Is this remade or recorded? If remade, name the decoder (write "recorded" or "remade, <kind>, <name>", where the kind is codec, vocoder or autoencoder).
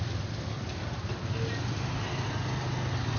recorded